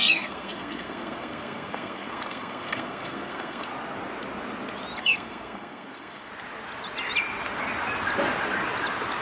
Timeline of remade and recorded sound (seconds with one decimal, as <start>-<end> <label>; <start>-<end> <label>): 0.0-3.7 remade; 3.7-5.0 recorded; 5.0-6.3 remade; 6.3-9.2 recorded